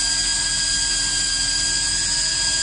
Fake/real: real